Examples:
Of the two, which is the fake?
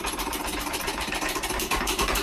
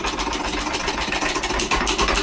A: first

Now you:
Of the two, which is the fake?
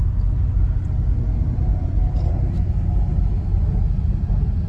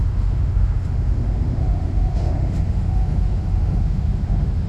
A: second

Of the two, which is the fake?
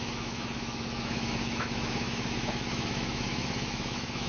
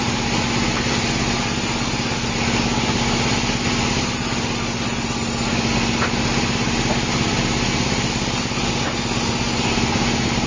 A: first